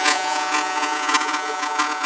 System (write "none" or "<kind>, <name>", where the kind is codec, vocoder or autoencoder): vocoder, Vocos